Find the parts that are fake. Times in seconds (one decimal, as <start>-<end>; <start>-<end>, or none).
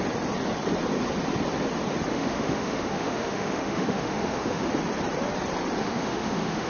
2.1-4.7; 5.8-6.7